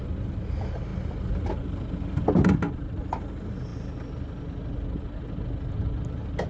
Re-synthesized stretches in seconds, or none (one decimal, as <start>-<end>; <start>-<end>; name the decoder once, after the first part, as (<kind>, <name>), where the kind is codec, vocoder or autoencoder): none